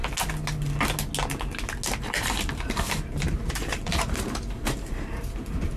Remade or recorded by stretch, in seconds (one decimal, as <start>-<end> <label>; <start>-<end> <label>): 0.0-2.0 recorded; 2.0-5.8 remade